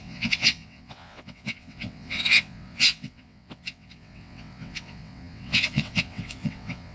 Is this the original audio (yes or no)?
no